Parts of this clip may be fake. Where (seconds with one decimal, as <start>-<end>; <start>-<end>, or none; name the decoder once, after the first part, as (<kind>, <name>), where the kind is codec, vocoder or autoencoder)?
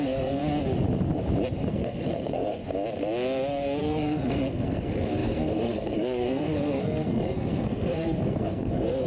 0.0-0.4 (codec, SNAC); 1.7-2.6; 3.8-9.1